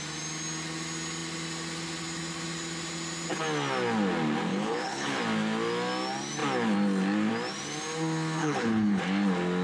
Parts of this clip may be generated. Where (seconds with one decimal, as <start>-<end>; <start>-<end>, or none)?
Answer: 4.5-5.2; 8.4-9.0